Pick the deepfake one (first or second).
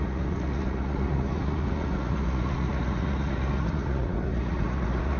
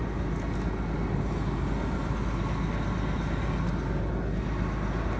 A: first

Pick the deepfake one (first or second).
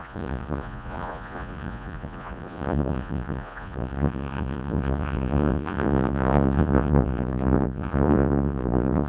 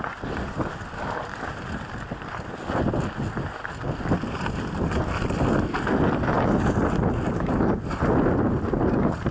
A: first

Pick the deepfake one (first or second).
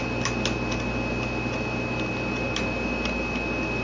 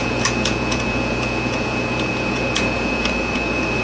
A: second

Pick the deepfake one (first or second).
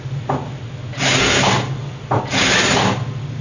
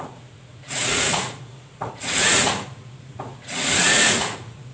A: second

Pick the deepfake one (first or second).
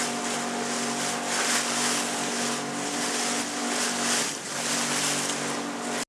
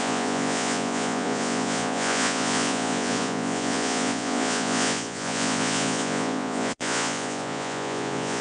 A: second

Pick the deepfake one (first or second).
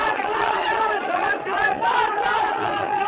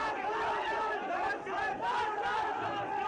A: first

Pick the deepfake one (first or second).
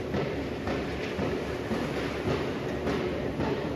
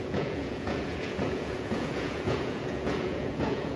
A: second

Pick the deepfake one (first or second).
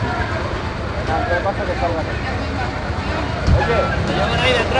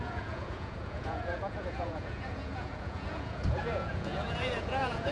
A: second